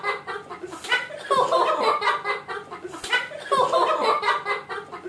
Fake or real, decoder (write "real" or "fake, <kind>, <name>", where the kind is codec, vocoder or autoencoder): real